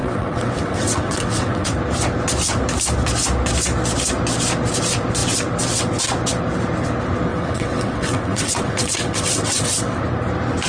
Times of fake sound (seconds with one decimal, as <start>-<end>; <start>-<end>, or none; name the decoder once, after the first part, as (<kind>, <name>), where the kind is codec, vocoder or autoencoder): 0.0-1.7 (vocoder, WaveNeXt); 7.3-10.0

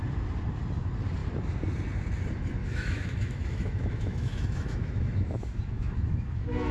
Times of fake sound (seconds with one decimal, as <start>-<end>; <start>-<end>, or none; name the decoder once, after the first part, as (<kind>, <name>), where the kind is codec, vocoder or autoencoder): 2.6-6.7 (autoencoder, DAC-VAE)